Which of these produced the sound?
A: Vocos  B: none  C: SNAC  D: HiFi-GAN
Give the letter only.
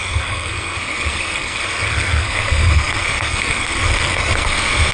C